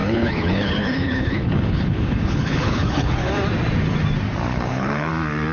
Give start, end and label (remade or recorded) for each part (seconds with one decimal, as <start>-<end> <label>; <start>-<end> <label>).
0.0-3.3 remade; 3.3-4.5 recorded; 4.5-5.1 remade; 5.1-5.5 recorded